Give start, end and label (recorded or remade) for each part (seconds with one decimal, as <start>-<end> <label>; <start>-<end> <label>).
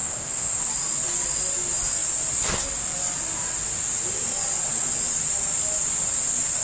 0.0-0.6 remade; 0.6-6.6 recorded